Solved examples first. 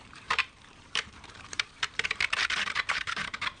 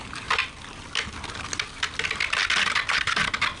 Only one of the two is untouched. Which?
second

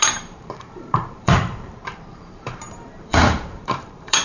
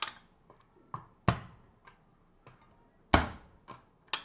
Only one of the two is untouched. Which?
second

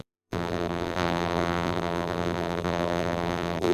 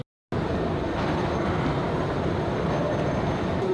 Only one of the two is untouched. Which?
second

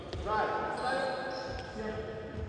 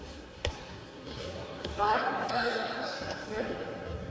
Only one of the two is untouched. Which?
first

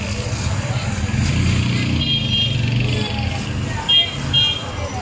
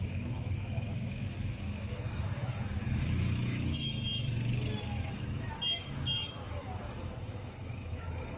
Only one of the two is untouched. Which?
first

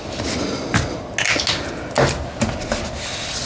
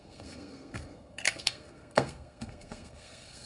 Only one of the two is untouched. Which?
first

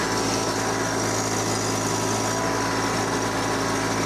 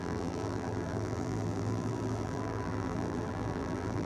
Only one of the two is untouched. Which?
first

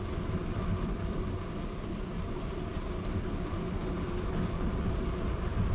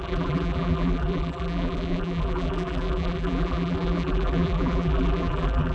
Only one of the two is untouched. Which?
first